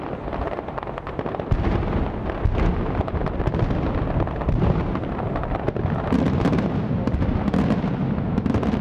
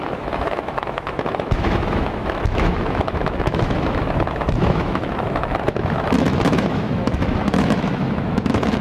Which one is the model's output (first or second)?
second